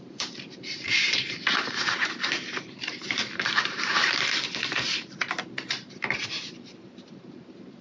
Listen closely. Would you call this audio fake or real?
fake